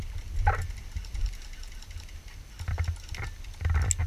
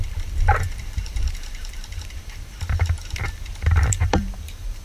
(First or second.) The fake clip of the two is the second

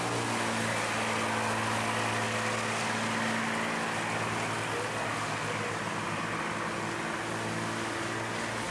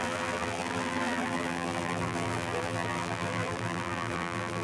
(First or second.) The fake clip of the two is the second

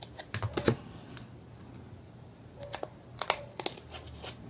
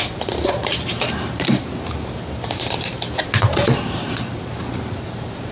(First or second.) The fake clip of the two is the second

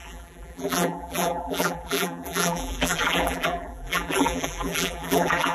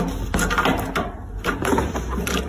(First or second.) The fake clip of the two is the first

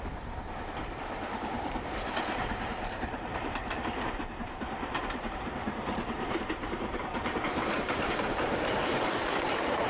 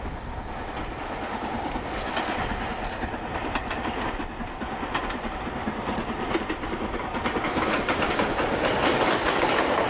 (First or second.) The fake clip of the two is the first